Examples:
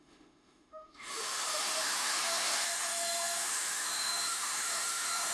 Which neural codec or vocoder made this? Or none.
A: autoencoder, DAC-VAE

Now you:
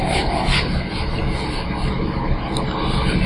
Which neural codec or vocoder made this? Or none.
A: none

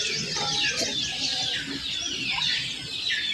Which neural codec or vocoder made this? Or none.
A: vocoder, BigVGAN v2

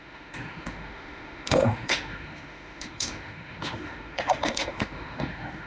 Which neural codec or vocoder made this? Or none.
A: autoencoder, DAC-VAE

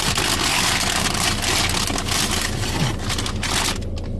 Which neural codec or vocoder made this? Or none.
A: none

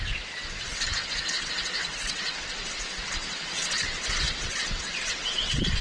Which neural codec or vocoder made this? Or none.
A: vocoder, WaveNeXt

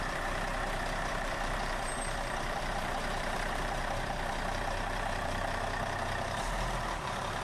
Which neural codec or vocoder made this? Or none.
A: vocoder, BigVGAN v2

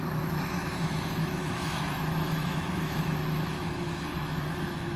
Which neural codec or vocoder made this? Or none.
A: autoencoder, DAC-VAE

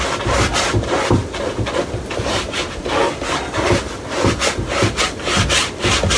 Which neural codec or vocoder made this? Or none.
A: none